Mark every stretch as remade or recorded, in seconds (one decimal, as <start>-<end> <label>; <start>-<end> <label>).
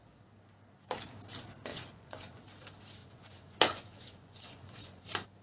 0.0-1.7 recorded; 1.7-2.4 remade; 2.4-3.0 recorded; 3.0-5.0 remade; 5.0-5.4 recorded